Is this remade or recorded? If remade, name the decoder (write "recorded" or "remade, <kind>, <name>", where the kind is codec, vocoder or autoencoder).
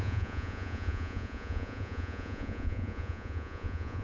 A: remade, vocoder, Vocos